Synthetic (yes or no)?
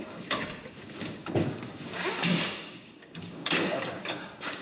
yes